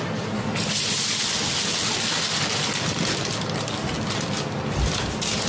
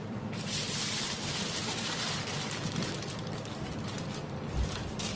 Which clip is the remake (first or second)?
second